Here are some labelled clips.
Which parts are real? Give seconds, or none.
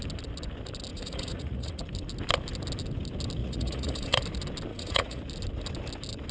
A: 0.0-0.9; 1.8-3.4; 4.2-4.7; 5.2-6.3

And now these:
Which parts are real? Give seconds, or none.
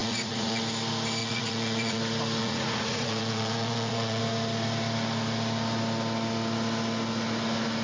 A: 0.6-1.2; 2.0-2.4; 4.2-7.8